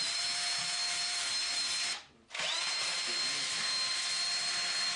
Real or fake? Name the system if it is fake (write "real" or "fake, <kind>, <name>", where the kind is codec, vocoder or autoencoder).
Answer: real